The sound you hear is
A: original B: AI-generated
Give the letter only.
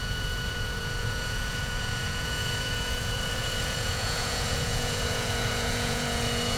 B